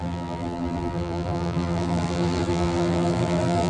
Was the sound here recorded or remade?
remade